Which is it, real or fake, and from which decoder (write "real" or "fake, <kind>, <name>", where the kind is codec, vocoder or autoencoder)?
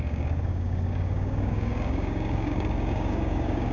fake, codec, DAC